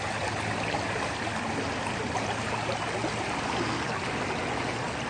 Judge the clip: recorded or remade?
recorded